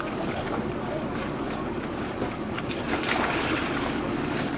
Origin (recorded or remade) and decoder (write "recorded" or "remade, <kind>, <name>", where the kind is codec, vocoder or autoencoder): remade, codec, DAC